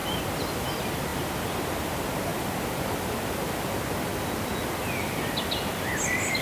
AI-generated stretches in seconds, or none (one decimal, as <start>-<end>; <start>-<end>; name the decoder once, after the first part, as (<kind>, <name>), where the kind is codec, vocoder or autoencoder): none